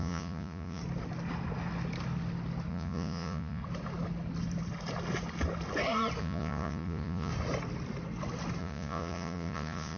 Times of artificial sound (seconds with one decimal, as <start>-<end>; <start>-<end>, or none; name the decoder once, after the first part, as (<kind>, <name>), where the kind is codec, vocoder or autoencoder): 0.0-0.8 (vocoder, Vocos); 2.7-3.6; 6.2-7.3; 8.6-10.0